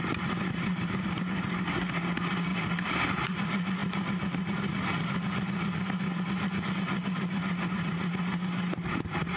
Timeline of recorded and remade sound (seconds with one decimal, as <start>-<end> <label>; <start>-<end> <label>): 0.0-0.7 recorded; 0.7-1.9 remade; 1.9-2.5 recorded; 2.5-3.2 remade; 3.2-9.4 recorded